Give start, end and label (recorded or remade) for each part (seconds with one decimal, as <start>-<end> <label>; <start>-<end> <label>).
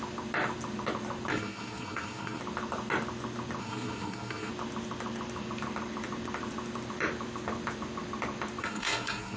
0.0-1.3 recorded; 1.3-2.4 remade; 2.4-3.6 recorded; 3.6-4.5 remade; 4.5-8.6 recorded; 8.6-9.4 remade